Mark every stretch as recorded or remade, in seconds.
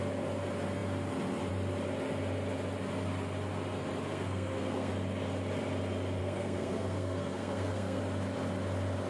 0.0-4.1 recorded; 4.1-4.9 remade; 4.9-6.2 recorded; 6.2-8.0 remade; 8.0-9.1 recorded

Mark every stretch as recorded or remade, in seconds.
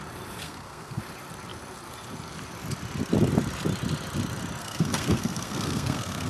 0.0-0.4 recorded; 0.4-1.0 remade; 1.0-4.6 recorded; 4.6-6.3 remade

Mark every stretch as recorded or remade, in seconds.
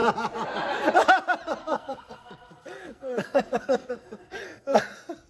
0.0-1.6 recorded; 1.6-4.8 remade; 4.8-5.3 recorded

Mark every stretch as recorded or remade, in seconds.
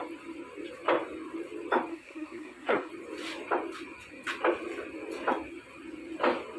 0.0-1.9 recorded; 1.9-2.9 remade; 2.9-6.6 recorded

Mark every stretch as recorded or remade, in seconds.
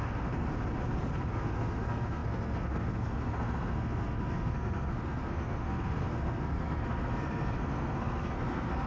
0.0-0.5 remade; 0.5-1.3 recorded; 1.3-8.9 remade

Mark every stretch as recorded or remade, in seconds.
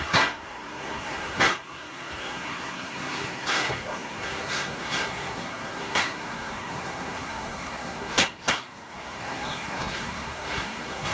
0.0-11.1 remade